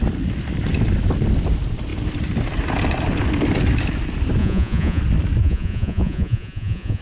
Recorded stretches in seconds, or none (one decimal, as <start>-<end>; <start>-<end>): 0.0-4.4; 5.0-5.4